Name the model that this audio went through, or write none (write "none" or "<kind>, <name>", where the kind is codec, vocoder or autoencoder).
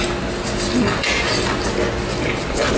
none